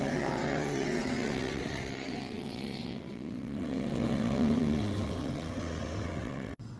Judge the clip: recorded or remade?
remade